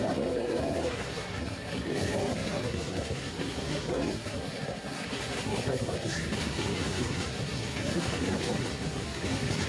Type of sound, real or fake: fake